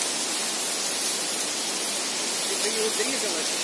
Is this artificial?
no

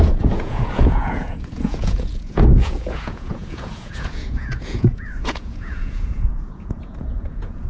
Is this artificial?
yes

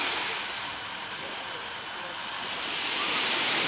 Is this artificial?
yes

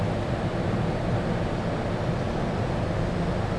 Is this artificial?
no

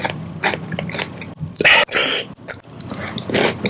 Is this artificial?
no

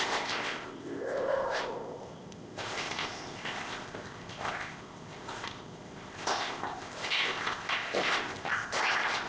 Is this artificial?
yes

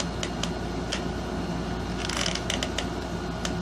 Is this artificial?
no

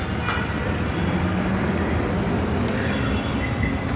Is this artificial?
no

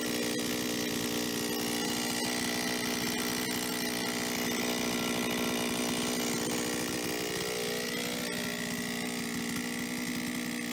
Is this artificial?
no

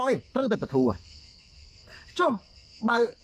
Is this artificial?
yes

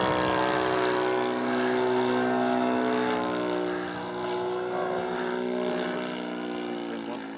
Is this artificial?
no